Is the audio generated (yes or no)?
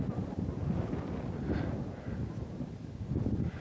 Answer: no